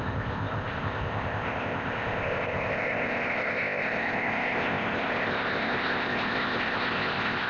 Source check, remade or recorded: remade